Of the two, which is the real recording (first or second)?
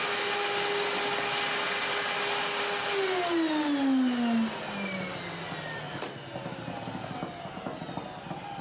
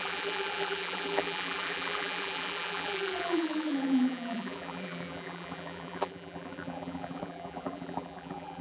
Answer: first